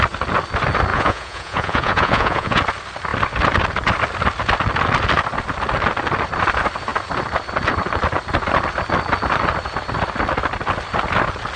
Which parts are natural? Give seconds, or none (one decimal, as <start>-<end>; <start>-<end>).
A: 0.0-0.9; 2.6-11.6